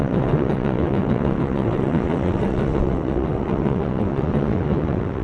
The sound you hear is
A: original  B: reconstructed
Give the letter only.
B